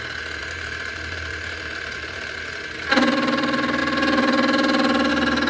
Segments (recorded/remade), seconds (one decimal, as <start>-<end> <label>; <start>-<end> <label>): 0.0-0.4 recorded; 0.4-2.5 remade; 2.5-5.5 recorded